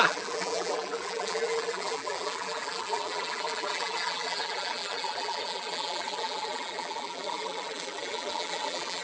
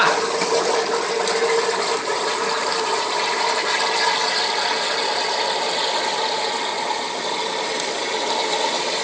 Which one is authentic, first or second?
second